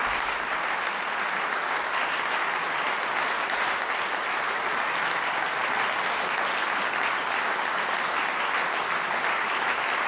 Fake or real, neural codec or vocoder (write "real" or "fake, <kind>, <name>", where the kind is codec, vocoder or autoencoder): real